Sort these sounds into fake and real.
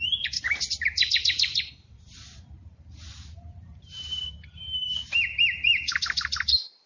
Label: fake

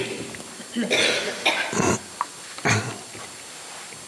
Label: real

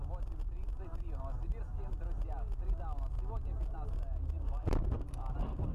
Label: real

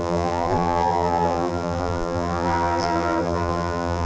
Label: fake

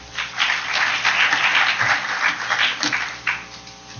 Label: fake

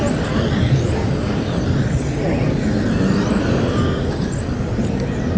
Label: real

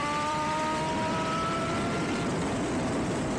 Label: fake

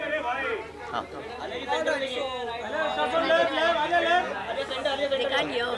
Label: real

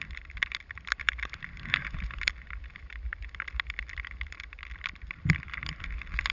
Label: fake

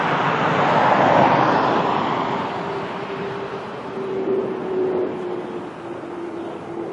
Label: real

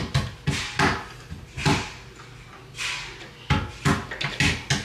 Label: real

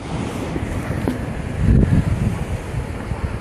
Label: real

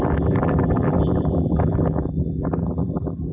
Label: fake